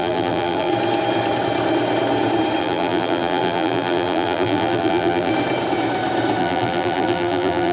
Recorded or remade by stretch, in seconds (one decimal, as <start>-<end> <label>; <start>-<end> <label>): 0.0-0.7 remade; 0.7-2.6 recorded; 2.6-5.3 remade; 5.3-6.4 recorded; 6.4-7.7 remade